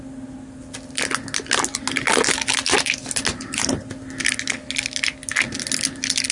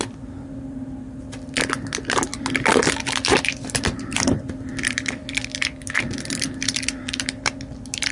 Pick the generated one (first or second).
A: second